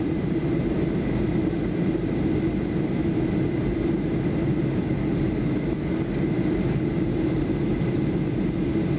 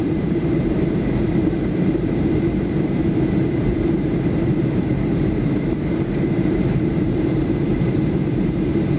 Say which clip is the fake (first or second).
second